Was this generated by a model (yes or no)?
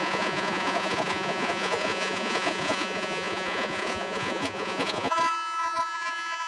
yes